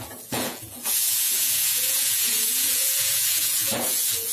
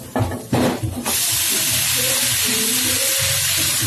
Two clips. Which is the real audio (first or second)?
second